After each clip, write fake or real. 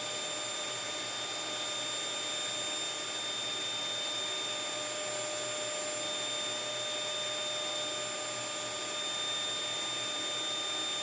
real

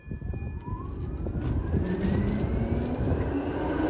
real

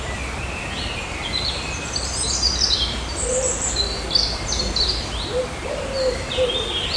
real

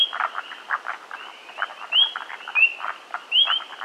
real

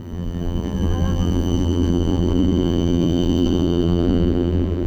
fake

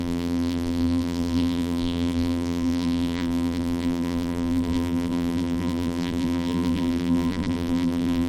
fake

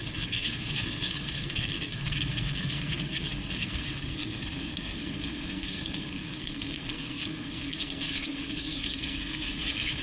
fake